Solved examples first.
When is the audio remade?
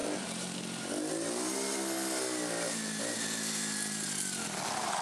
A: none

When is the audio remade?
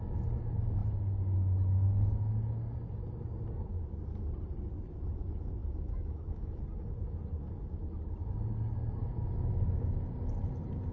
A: 5.6-6.6 (autoencoder, DAC-VAE)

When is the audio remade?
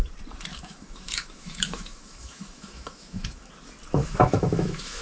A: 0.5-3.5 (autoencoder, DAC-VAE); 4.0-5.0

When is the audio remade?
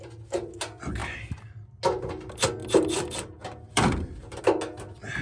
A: 2.6-4.4 (vocoder, BigVGAN v2)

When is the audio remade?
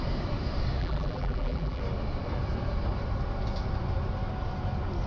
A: 0.8-1.8 (vocoder, BigVGAN v2)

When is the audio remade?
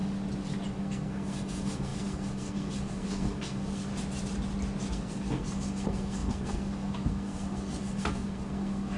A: 0.8-3.9 (codec, SNAC); 4.9-9.0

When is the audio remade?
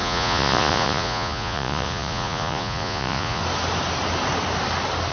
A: 0.0-3.4 (vocoder, Vocos)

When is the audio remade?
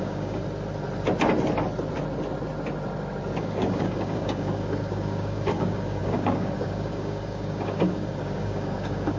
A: 0.0-0.4 (codec, DAC); 3.4-9.2